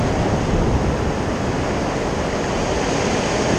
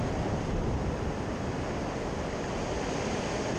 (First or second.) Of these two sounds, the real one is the first